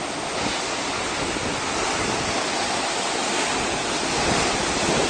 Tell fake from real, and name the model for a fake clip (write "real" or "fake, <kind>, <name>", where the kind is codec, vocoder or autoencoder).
real